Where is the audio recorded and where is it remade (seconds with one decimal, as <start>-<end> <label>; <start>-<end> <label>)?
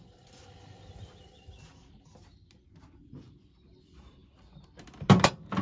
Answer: 0.0-5.6 recorded